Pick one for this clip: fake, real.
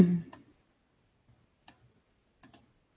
real